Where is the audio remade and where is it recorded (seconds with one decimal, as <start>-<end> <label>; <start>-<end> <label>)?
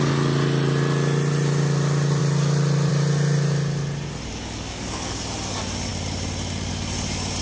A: 0.0-4.3 recorded; 4.3-5.2 remade; 5.2-7.4 recorded